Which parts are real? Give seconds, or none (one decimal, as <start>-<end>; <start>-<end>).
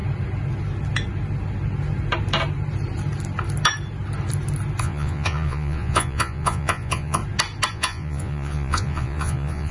0.0-4.8; 7.2-7.7